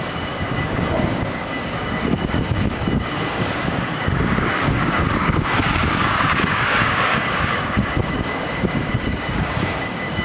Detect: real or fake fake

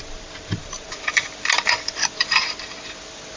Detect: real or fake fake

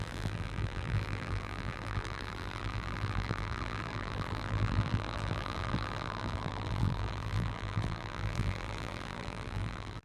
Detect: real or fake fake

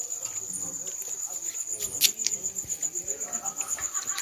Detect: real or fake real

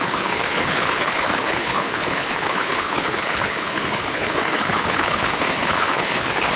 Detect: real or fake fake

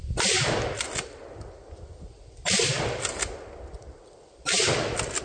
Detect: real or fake real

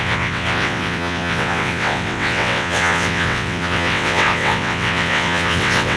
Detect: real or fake fake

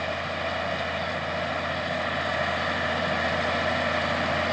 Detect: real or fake real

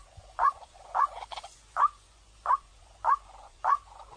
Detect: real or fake fake